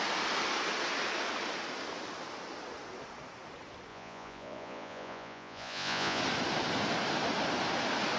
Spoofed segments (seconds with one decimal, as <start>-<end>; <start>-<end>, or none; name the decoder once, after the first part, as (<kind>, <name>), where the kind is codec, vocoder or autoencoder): 3.9-6.2 (vocoder, Vocos)